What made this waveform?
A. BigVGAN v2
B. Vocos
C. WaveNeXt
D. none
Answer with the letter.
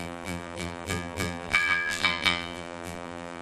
A